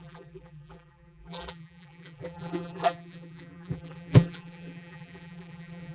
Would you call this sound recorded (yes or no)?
no